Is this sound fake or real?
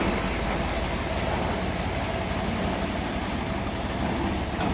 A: real